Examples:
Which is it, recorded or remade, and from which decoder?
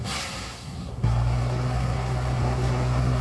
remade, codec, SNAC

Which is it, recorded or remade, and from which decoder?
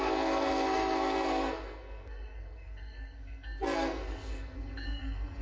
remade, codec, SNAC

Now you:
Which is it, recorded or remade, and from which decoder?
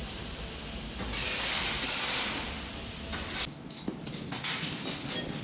recorded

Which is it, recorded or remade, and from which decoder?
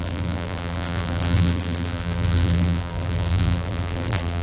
remade, vocoder, BigVGAN v2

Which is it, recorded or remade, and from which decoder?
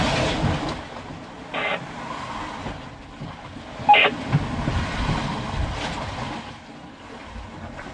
recorded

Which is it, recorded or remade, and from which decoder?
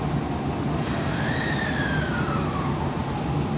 recorded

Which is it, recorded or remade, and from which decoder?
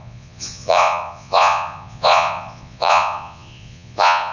remade, vocoder, Vocos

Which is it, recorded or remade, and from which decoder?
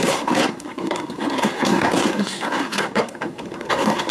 remade, codec, SNAC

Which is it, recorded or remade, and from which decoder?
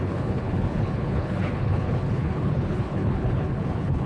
remade, codec, HILCodec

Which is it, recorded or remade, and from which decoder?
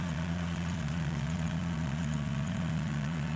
remade, vocoder, Vocos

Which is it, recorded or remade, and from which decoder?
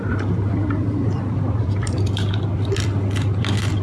remade, vocoder, BigVGAN v2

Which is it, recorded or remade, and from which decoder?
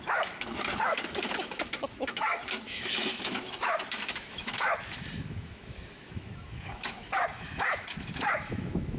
remade, autoencoder, DAC-VAE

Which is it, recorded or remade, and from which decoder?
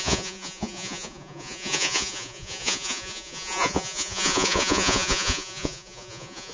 remade, vocoder, Vocos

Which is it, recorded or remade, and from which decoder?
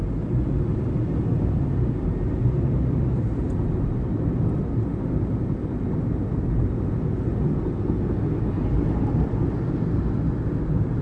recorded